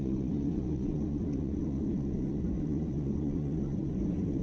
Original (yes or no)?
no